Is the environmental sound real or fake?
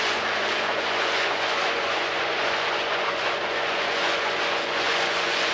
fake